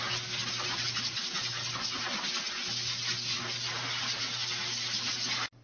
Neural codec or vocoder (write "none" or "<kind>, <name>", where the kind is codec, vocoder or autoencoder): none